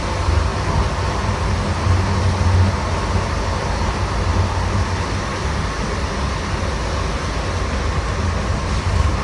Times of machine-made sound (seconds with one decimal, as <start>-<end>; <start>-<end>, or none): none